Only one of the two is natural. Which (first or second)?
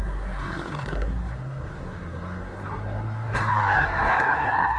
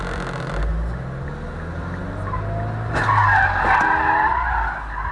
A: second